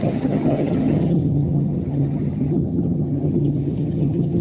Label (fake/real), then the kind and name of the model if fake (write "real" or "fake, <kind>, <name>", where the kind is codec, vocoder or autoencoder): fake, vocoder, HiFi-GAN